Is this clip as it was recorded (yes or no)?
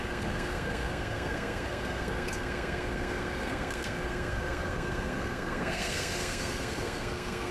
no